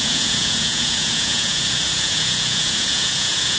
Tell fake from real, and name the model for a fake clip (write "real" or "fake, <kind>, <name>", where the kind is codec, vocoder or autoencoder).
fake, vocoder, Vocos